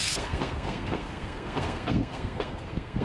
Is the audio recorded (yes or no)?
no